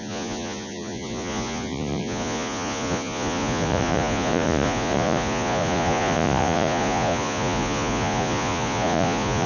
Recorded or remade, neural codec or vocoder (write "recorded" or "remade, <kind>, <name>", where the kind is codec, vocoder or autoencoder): remade, vocoder, Vocos